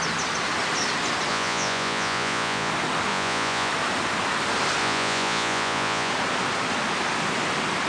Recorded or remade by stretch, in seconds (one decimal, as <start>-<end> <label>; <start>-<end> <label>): 0.0-1.3 recorded; 1.3-2.7 remade; 2.7-3.1 recorded; 3.1-3.7 remade; 3.7-4.8 recorded; 4.8-6.1 remade; 6.1-7.9 recorded